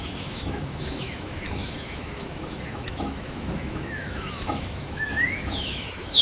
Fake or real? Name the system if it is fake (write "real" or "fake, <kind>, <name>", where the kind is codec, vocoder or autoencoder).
fake, autoencoder, DAC-VAE